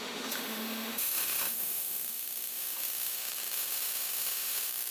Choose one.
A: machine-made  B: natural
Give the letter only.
A